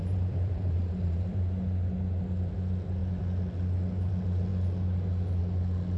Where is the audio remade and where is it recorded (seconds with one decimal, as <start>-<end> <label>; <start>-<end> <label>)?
0.0-1.4 remade; 1.4-6.0 recorded